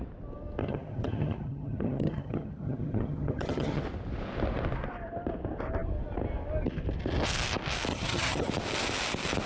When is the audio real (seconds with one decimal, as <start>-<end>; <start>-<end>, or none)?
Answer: 0.0-0.6; 3.8-7.9; 8.5-9.5